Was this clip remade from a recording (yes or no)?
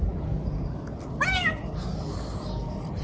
no